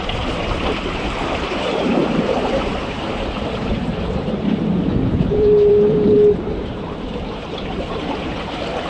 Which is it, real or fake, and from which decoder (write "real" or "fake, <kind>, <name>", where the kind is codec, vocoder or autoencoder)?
fake, vocoder, BigVGAN v2